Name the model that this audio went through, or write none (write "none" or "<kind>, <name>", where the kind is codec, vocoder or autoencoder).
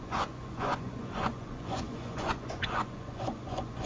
vocoder, Vocos